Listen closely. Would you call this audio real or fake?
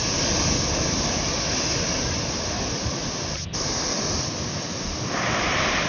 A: real